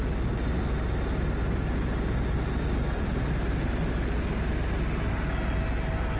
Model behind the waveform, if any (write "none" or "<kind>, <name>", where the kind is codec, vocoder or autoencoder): none